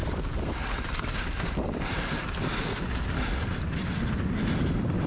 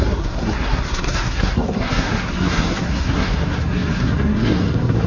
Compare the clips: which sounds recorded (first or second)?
first